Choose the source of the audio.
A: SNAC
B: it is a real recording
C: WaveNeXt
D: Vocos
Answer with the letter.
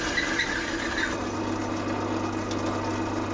B